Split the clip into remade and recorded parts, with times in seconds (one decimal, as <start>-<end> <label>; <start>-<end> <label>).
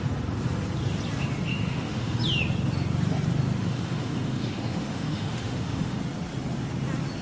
0.0-1.5 recorded; 1.5-2.2 remade; 2.2-3.6 recorded; 3.6-6.0 remade; 6.0-7.2 recorded